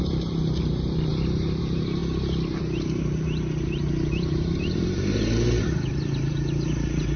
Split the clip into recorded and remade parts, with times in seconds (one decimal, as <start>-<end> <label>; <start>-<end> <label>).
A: 0.0-2.0 remade; 2.0-2.6 recorded; 2.6-7.2 remade